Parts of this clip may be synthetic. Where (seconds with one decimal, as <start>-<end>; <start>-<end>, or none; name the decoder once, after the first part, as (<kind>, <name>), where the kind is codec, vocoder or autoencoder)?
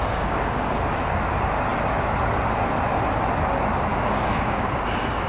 0.0-0.8 (codec, DAC); 3.9-4.7